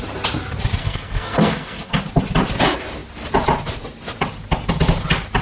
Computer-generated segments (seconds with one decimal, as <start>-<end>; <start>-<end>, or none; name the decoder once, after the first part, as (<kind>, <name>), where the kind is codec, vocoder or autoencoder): 0.8-2.0 (codec, SNAC)

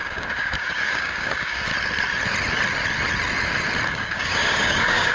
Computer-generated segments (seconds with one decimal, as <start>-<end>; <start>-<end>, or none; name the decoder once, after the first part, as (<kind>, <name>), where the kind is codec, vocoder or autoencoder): 0.0-1.7 (codec, DAC); 3.9-5.1

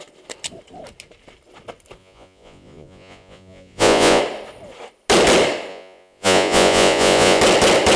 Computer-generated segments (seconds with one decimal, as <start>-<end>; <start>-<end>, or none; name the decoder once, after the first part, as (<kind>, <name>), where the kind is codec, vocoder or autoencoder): 2.0-4.2 (vocoder, Vocos); 5.7-7.4

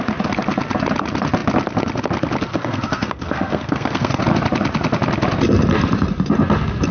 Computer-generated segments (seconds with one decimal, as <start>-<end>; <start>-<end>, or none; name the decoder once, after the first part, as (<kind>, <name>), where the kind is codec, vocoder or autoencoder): 2.5-4.2 (codec, SNAC)

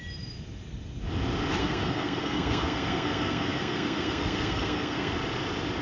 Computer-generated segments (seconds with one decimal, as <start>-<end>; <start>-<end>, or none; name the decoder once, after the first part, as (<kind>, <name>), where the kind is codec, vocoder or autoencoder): 1.6-5.1 (codec, SNAC)